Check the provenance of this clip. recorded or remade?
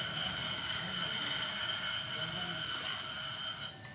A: recorded